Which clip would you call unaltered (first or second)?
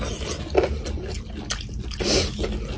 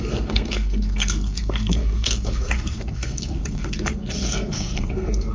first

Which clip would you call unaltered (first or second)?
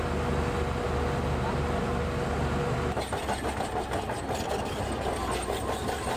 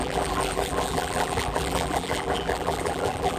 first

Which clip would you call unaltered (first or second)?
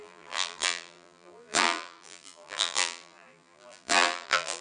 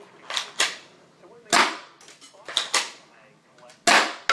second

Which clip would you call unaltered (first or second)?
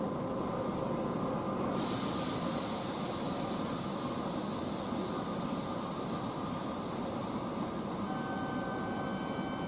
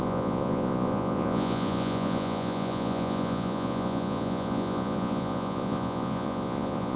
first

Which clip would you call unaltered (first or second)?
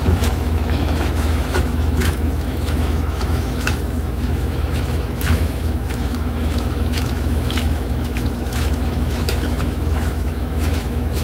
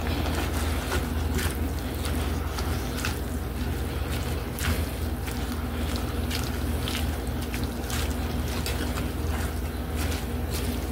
second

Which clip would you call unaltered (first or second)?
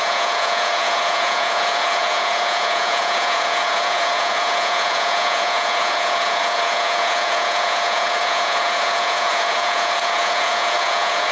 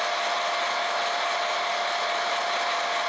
second